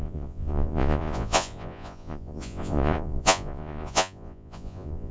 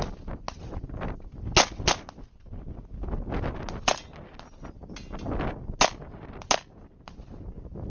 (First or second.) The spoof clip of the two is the first